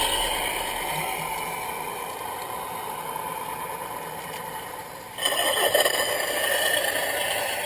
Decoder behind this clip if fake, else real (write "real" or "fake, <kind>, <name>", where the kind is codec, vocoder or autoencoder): real